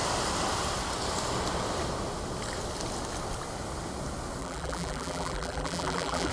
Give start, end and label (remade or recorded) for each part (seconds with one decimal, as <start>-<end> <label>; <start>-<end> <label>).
0.0-4.4 recorded; 4.4-6.3 remade